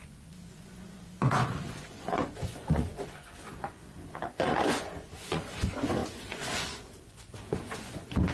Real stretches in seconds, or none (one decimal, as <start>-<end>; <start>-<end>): none